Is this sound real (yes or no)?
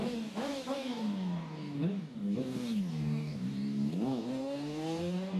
no